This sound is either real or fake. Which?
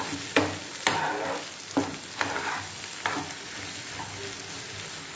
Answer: real